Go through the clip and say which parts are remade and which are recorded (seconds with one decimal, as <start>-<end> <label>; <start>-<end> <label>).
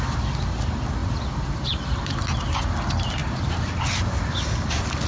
0.0-1.0 recorded; 1.0-2.2 remade; 2.2-5.1 recorded